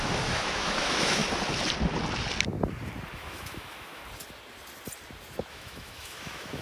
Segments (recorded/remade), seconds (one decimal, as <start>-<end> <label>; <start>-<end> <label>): 0.0-1.2 remade; 1.2-3.1 recorded; 3.1-4.0 remade; 4.0-5.5 recorded; 5.5-6.6 remade